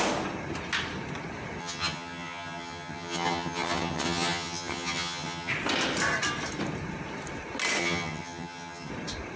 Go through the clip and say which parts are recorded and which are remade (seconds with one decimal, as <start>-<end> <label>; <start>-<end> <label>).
0.0-1.6 recorded; 1.6-5.5 remade; 5.5-7.8 recorded; 7.8-8.9 remade; 8.9-9.4 recorded